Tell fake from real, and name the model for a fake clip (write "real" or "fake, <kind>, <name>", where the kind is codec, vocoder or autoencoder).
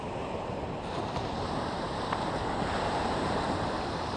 fake, vocoder, BigVGAN v2